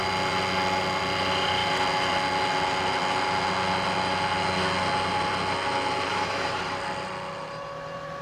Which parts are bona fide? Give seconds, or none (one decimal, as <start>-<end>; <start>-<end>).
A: 0.0-6.1; 6.6-8.2